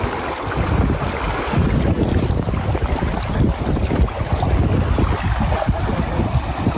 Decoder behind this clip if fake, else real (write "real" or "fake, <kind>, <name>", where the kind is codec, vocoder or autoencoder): real